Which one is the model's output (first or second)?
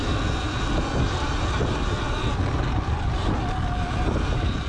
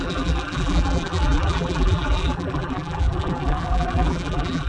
second